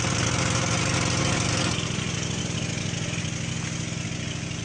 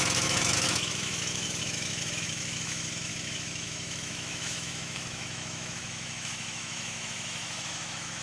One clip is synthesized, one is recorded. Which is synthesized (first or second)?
second